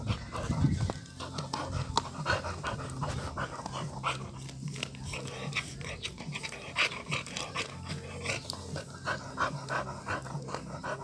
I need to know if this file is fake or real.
real